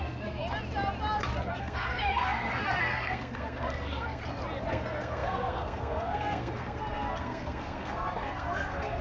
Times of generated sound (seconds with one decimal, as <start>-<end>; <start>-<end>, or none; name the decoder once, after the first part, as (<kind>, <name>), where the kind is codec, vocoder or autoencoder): 0.0-0.4 (codec, SNAC); 1.5-4.2; 4.7-9.0